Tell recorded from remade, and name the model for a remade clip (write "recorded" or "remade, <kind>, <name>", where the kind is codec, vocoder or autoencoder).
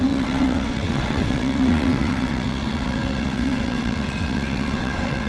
remade, vocoder, WaveNeXt